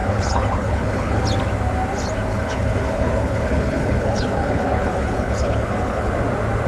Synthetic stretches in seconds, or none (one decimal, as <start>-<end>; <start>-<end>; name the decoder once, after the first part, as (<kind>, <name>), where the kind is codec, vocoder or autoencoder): 0.0-1.2 (codec, HILCodec); 2.3-6.1